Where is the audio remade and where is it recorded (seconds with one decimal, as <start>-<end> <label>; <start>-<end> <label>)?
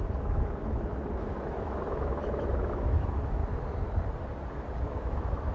0.0-3.4 remade; 3.4-4.8 recorded; 4.8-5.5 remade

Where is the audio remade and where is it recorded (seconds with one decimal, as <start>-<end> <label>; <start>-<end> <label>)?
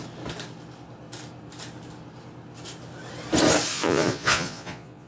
0.0-3.7 recorded; 3.7-5.1 remade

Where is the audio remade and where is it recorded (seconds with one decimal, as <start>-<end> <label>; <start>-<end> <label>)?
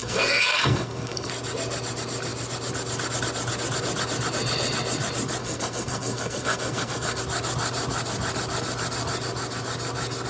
0.0-1.3 remade; 1.3-5.4 recorded; 5.4-7.2 remade; 7.2-10.3 recorded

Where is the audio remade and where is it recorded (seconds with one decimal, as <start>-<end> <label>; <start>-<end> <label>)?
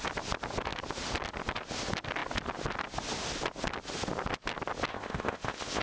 0.0-4.9 recorded; 4.9-5.8 remade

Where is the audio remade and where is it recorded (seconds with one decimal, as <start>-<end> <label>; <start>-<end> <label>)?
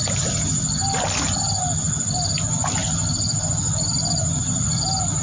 0.0-5.2 recorded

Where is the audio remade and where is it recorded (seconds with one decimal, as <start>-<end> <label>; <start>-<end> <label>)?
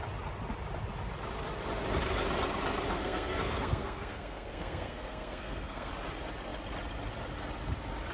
0.0-2.9 recorded; 2.9-5.9 remade; 5.9-8.1 recorded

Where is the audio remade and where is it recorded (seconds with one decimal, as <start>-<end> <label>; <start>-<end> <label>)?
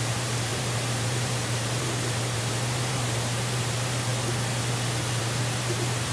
0.0-4.1 remade; 4.1-5.2 recorded; 5.2-6.1 remade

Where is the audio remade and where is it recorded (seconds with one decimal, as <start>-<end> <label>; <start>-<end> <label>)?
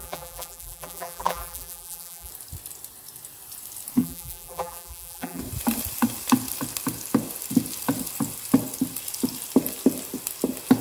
0.0-2.3 remade; 2.3-4.0 recorded; 4.0-5.4 remade; 5.4-10.8 recorded